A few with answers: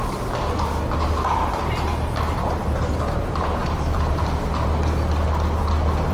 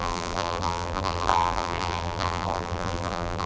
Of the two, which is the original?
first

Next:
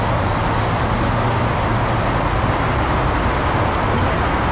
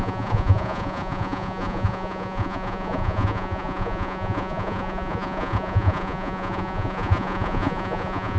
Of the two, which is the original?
first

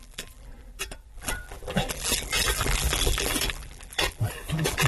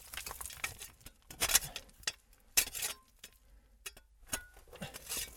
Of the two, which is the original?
second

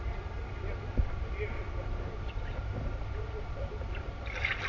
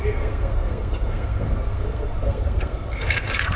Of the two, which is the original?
first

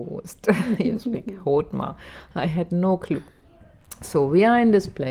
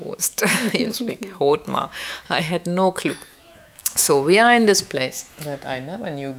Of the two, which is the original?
first